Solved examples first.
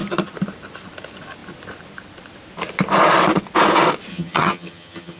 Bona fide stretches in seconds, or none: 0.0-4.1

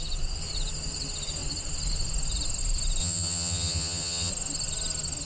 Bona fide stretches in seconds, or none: 0.0-3.0; 4.3-5.2

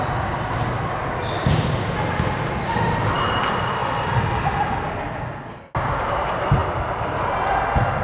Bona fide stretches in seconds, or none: 0.0-8.0

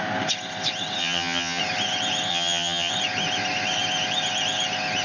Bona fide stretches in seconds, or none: 0.0-1.0; 1.6-2.3; 2.9-5.0